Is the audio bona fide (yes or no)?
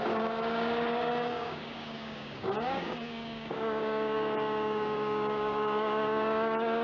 no